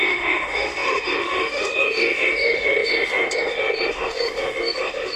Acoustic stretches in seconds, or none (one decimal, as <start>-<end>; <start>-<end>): none